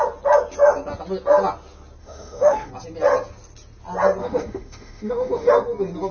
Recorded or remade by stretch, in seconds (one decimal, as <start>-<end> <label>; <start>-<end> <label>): 0.0-2.0 recorded; 2.0-2.7 remade; 2.7-4.2 recorded; 4.2-5.5 remade; 5.5-6.1 recorded